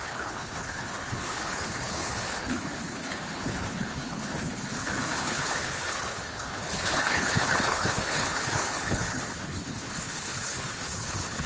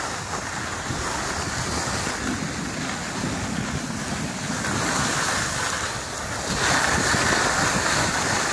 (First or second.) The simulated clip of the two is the first